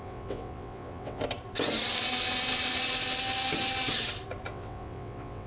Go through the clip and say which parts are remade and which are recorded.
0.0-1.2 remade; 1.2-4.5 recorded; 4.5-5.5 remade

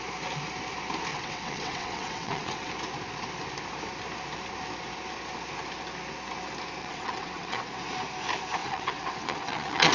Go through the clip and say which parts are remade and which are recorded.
0.0-1.1 recorded; 1.1-2.7 remade; 2.7-6.8 recorded; 6.8-7.7 remade; 7.7-8.6 recorded; 8.6-9.9 remade

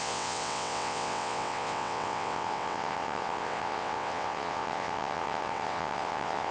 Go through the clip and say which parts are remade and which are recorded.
0.0-6.5 remade

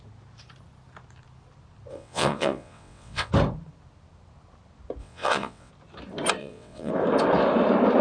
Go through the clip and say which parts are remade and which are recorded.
0.0-1.9 recorded; 1.9-3.3 remade; 3.3-5.0 recorded; 5.0-5.7 remade; 5.7-6.4 recorded; 6.4-6.9 remade; 6.9-8.0 recorded

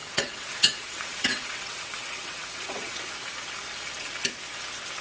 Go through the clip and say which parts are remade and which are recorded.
0.0-3.0 remade; 3.0-5.0 recorded

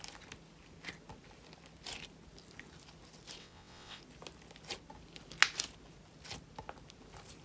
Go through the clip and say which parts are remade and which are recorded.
0.0-3.4 recorded; 3.4-4.0 remade; 4.0-7.4 recorded

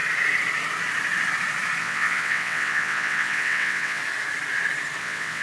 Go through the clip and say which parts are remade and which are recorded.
0.0-1.8 recorded; 1.8-4.0 remade; 4.0-5.0 recorded; 5.0-5.4 remade